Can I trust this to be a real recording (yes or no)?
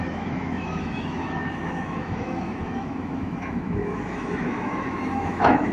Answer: no